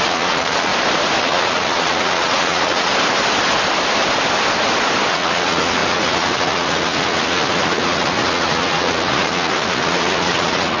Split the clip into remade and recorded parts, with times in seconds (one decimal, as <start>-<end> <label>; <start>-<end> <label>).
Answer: 0.0-0.7 remade; 0.7-1.2 recorded; 1.2-2.9 remade; 2.9-5.1 recorded; 5.1-10.8 remade